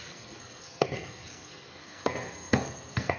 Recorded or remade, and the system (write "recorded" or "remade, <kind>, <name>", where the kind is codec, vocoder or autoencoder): remade, codec, SNAC